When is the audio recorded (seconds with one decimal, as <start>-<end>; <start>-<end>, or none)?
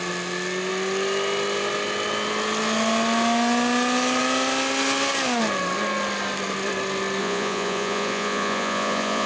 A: 0.0-7.2